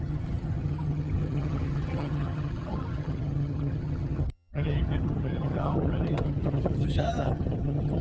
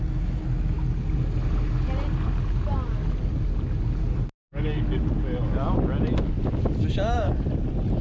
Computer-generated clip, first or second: first